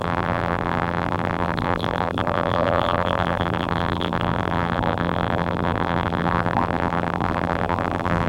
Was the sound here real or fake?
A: fake